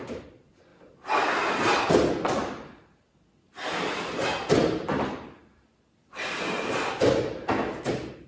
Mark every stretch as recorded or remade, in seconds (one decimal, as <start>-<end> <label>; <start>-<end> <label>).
0.0-8.3 recorded